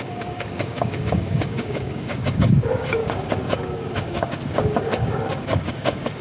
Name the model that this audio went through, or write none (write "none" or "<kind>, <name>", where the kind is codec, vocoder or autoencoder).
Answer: codec, DAC